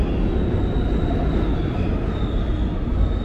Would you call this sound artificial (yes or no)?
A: no